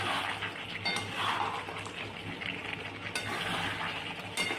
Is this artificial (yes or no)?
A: no